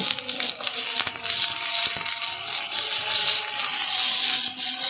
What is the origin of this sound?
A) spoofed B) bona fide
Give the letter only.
B